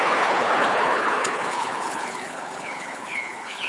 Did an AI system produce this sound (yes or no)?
yes